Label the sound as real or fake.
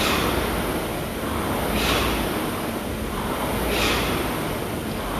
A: real